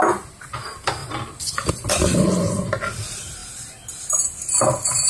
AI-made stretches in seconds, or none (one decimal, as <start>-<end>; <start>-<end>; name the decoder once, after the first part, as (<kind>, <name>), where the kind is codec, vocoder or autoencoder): none